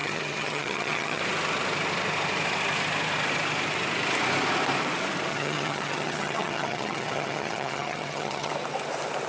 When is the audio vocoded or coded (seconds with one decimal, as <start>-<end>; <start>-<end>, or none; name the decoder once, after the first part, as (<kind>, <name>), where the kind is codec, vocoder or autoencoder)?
0.0-1.2 (vocoder, HiFi-GAN); 5.3-8.5